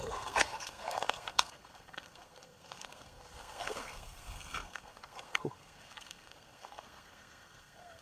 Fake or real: fake